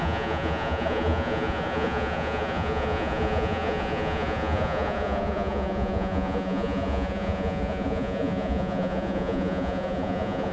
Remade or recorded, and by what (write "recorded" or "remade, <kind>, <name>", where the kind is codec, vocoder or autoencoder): remade, vocoder, Vocos